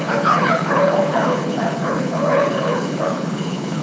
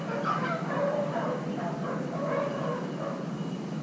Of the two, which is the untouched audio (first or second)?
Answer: second